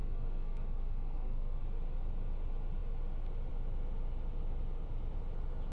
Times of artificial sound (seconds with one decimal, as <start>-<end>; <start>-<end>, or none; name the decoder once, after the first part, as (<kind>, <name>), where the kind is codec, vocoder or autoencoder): 0.0-1.6 (codec, SNAC)